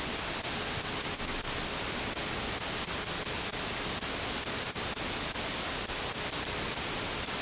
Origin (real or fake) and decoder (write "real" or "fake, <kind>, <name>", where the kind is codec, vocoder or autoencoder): real